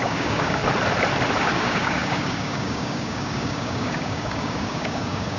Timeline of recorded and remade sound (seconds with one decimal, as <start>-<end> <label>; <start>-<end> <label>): 0.0-0.6 remade; 0.6-1.4 recorded; 1.4-5.4 remade